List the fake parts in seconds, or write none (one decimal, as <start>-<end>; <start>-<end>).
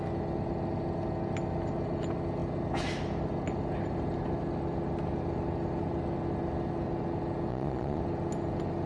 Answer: 7.5-8.0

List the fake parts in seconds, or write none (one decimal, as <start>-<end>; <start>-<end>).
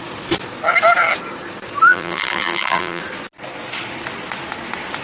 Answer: 1.9-3.0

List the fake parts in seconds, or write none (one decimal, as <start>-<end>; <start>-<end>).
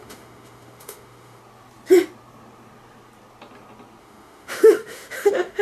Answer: 0.0-1.4; 4.0-5.6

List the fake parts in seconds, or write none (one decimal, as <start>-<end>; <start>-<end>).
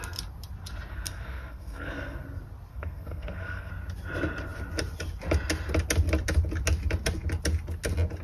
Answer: 0.9-2.2; 2.7-3.7